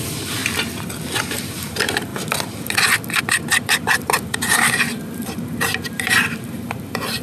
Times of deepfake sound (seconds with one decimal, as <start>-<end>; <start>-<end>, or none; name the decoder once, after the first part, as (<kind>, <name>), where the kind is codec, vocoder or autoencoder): 0.0-0.4 (vocoder, BigVGAN v2); 1.2-2.1; 3.2-7.2